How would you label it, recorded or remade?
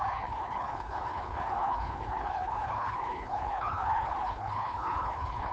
remade